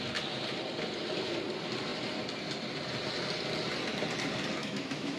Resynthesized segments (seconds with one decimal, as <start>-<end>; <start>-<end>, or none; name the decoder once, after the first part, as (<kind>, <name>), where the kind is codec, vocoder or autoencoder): 4.6-5.2 (autoencoder, DAC-VAE)